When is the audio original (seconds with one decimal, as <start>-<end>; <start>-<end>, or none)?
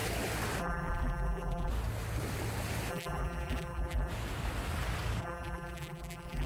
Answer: 0.0-0.6; 1.7-2.9; 4.1-5.2